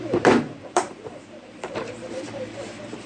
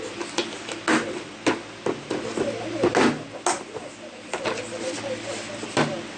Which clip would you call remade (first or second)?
first